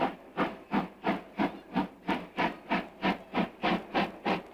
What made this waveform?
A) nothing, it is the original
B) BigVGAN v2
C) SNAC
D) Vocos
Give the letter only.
A